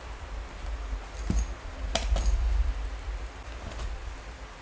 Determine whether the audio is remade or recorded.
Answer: recorded